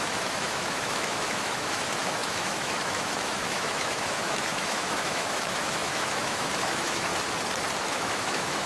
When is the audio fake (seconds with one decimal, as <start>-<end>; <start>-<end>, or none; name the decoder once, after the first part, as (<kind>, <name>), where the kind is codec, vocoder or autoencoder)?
0.0-7.1 (autoencoder, DAC-VAE); 7.8-8.7